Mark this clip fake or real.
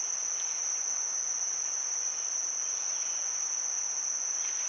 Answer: real